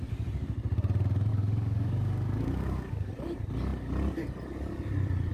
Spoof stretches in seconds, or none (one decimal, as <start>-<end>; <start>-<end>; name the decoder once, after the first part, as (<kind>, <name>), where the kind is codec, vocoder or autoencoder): 1.3-3.1 (codec, DAC)